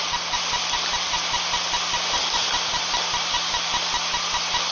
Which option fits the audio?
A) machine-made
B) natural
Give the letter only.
B